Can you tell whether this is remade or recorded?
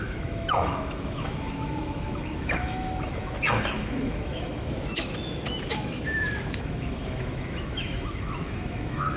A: remade